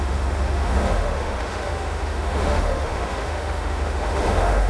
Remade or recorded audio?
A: remade